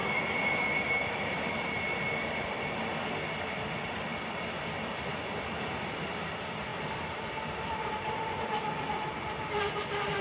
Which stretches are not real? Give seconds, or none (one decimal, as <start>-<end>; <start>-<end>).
none